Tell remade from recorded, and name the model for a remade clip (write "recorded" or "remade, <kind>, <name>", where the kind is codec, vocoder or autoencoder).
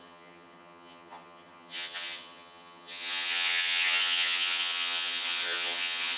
remade, vocoder, HiFi-GAN